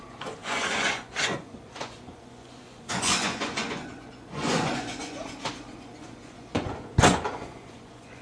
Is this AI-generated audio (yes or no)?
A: yes